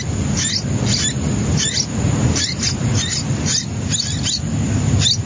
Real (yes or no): yes